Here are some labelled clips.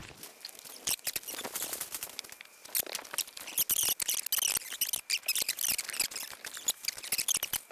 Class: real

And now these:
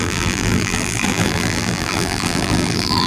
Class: fake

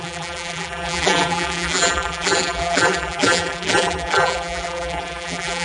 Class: fake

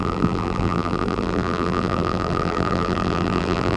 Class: fake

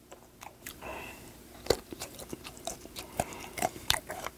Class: fake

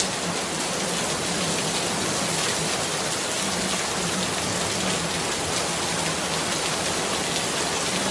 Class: real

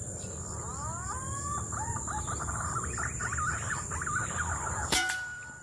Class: fake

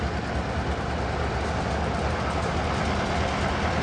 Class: real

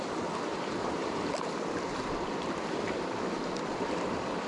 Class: fake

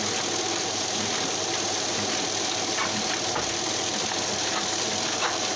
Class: real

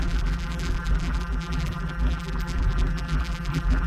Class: fake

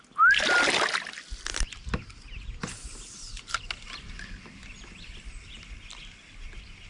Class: real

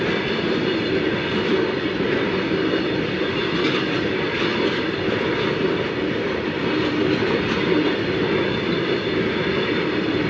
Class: real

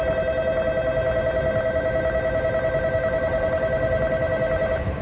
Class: real